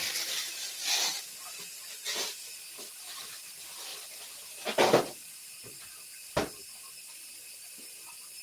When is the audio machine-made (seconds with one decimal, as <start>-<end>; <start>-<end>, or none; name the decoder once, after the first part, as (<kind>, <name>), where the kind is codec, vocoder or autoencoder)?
none